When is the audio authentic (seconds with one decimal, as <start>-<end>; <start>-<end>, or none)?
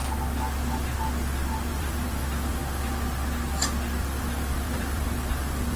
0.0-1.7; 2.6-4.0